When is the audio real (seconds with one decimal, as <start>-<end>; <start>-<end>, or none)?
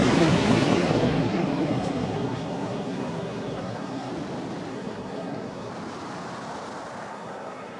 4.1-4.7; 5.7-7.1